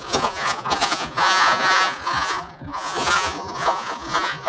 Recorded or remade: remade